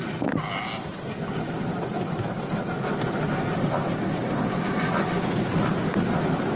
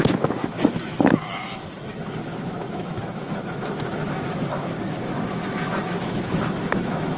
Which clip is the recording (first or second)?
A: first